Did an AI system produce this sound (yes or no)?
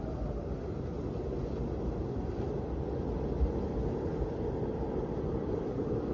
no